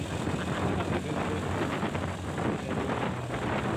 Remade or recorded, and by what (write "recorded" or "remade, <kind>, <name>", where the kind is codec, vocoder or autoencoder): recorded